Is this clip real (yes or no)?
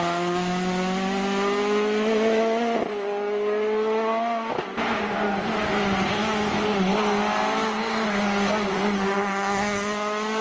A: yes